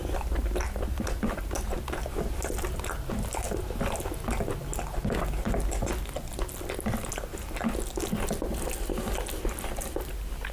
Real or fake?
real